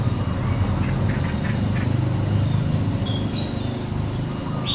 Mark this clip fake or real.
real